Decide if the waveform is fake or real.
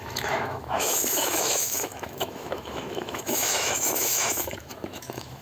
fake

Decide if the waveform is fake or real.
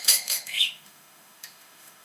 fake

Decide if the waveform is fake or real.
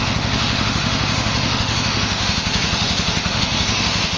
fake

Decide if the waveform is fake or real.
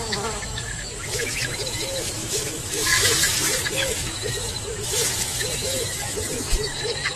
fake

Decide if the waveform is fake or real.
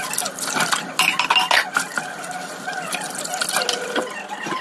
real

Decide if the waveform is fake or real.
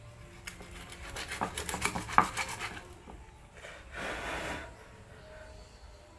real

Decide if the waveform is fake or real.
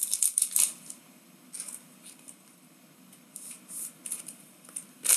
real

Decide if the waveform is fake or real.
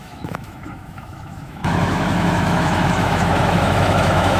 fake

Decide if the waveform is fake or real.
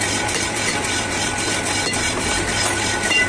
real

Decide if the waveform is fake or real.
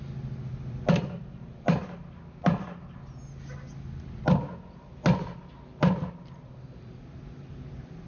real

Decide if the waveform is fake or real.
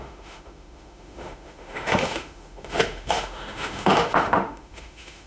fake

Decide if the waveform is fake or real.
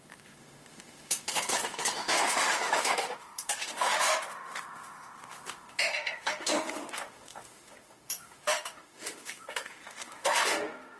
fake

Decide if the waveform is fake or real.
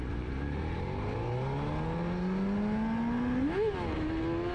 real